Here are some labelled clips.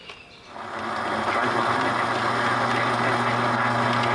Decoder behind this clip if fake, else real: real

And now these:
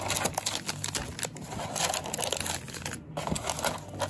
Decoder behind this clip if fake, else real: real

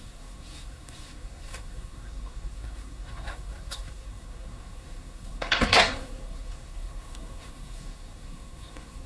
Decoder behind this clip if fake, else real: fake, codec, SNAC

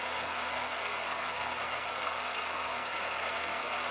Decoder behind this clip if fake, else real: fake, codec, SNAC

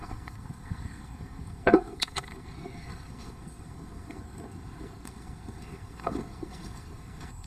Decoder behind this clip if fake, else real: fake, codec, SNAC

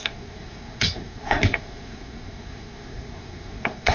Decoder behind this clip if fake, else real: fake, codec, SNAC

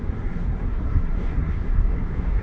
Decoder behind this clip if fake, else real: fake, codec, SNAC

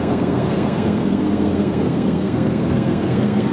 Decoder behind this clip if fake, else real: fake, codec, SNAC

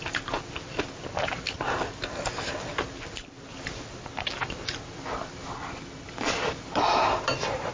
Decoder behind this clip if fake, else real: real